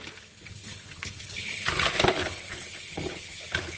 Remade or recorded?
remade